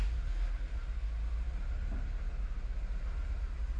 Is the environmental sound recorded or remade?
recorded